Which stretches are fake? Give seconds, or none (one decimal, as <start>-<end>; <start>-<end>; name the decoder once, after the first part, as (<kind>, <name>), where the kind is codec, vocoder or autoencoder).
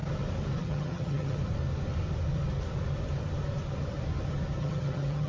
0.6-1.4 (vocoder, HiFi-GAN); 4.6-5.3